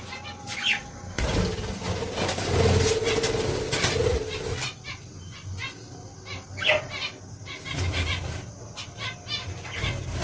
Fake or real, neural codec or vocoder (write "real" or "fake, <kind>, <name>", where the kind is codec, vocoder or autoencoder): real